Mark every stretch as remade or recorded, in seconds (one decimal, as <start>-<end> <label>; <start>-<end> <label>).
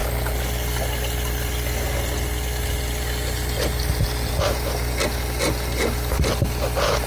0.0-7.1 recorded